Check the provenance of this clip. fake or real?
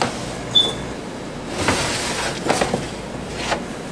real